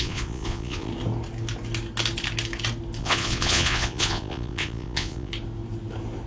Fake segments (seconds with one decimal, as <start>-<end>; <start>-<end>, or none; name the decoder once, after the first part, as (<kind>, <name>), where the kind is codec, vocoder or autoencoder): 0.0-0.9 (vocoder, Vocos); 3.0-5.3